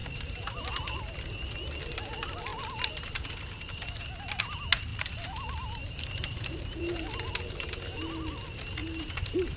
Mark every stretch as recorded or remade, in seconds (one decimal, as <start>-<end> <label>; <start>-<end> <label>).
0.0-0.7 remade; 0.7-4.9 recorded; 4.9-7.3 remade; 7.3-8.8 recorded; 8.8-9.6 remade